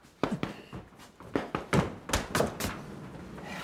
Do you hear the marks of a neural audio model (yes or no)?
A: no